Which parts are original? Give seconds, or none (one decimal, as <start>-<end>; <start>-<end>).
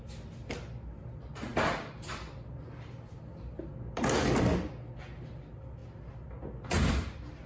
0.0-7.5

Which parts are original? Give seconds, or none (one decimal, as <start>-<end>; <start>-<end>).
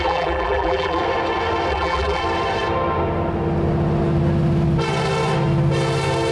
1.0-1.7; 2.2-6.3